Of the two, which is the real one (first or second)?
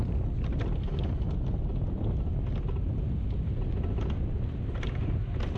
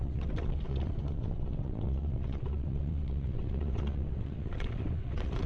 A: first